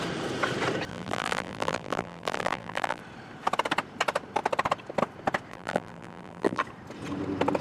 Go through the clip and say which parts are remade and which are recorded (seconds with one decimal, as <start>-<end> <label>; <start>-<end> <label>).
0.0-0.9 recorded; 0.9-3.0 remade; 3.0-5.5 recorded; 5.5-6.6 remade; 6.6-7.6 recorded

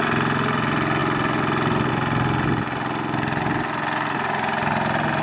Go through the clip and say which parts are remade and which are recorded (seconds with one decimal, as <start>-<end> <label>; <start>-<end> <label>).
0.0-5.2 recorded

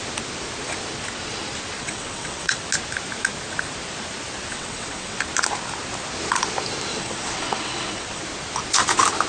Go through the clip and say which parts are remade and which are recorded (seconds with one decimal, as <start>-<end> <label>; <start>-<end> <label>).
0.0-1.8 recorded; 1.8-2.6 remade; 2.6-4.5 recorded; 4.5-5.2 remade; 5.2-6.9 recorded; 6.9-8.2 remade; 8.2-9.3 recorded

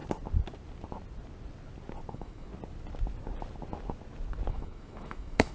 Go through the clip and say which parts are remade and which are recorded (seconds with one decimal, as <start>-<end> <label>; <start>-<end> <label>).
0.0-2.1 recorded; 2.1-2.5 remade; 2.5-4.5 recorded; 4.5-5.5 remade